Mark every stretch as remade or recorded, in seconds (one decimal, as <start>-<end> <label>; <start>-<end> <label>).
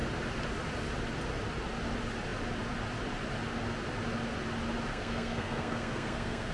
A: 0.0-4.9 recorded; 4.9-6.5 remade